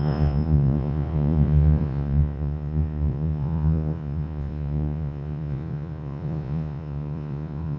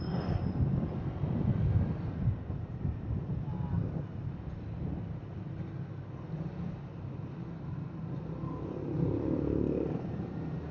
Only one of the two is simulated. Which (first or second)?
first